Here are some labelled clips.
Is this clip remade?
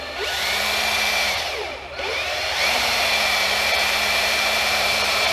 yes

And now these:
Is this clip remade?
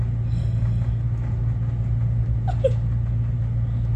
no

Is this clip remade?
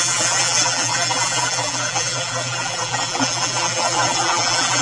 yes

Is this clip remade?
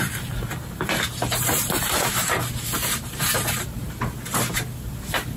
yes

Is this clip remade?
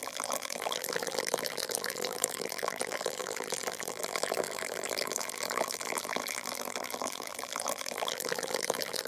yes